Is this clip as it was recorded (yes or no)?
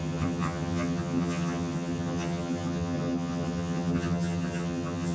no